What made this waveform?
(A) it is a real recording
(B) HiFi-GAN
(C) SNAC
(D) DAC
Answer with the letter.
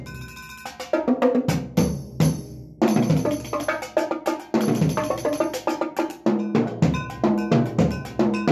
A